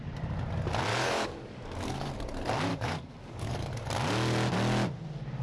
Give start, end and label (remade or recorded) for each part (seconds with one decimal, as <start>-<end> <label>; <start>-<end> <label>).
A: 0.0-0.9 recorded; 0.9-2.1 remade; 2.1-2.7 recorded; 2.7-3.9 remade; 3.9-5.4 recorded